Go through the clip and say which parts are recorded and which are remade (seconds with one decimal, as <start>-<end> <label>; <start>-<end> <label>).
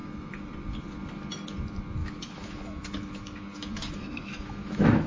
0.0-0.5 remade; 0.5-2.0 recorded; 2.0-5.1 remade